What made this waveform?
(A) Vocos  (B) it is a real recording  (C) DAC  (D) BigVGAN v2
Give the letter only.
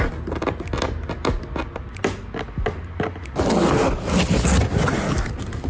B